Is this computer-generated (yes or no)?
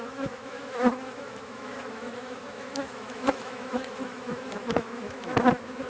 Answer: yes